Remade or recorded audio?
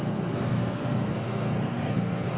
remade